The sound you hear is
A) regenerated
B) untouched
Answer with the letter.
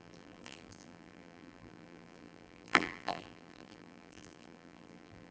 A